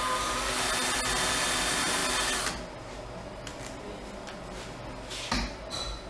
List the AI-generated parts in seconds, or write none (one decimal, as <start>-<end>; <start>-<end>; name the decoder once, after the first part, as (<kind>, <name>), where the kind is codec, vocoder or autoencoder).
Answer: none